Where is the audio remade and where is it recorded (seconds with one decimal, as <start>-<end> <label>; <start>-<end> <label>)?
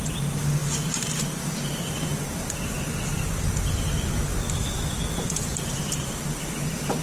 0.0-0.6 recorded; 0.6-1.4 remade; 1.4-5.5 recorded; 5.5-6.1 remade; 6.1-7.0 recorded